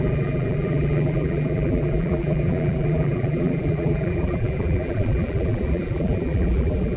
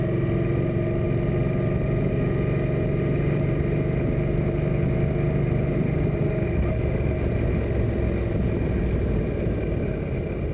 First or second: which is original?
second